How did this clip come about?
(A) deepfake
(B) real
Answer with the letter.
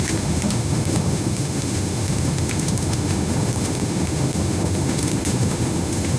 A